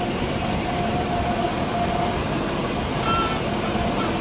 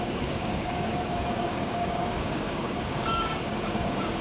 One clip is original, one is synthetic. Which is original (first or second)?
first